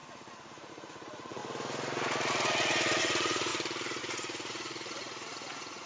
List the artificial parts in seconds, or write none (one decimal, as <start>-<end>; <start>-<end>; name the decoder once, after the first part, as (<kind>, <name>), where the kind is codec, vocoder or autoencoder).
0.7-1.4 (vocoder, Vocos); 3.0-3.5; 4.0-5.9